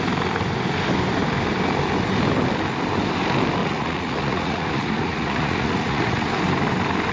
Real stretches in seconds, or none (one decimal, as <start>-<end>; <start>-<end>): 0.0-3.6; 6.3-7.1